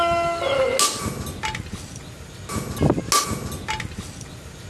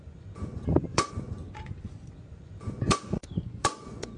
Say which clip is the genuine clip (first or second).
first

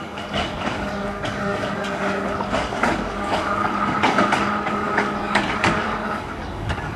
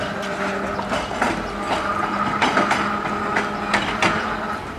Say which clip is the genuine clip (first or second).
second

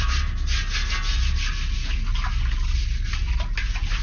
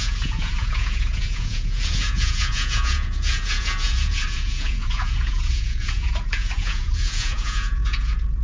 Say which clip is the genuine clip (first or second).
first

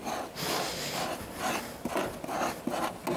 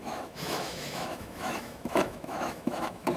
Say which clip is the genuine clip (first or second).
first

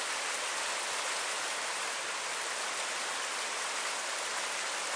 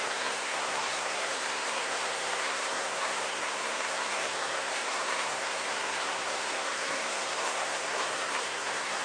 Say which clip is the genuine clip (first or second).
first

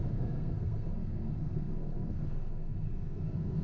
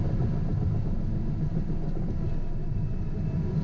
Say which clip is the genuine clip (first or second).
second